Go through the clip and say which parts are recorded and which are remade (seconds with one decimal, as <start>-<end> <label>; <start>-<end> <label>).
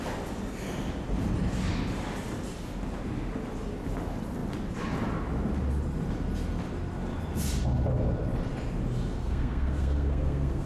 0.0-9.2 recorded; 9.2-10.7 remade